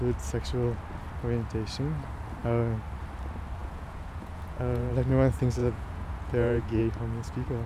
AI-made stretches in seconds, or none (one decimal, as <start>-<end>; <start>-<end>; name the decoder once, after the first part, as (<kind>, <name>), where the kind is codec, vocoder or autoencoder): 3.6-4.9 (vocoder, Vocos); 5.6-6.8